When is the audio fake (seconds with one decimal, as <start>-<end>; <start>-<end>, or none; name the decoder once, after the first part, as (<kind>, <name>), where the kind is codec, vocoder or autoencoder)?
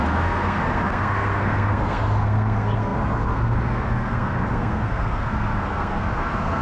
0.0-6.6 (codec, SNAC)